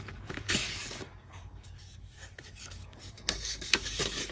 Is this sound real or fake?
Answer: fake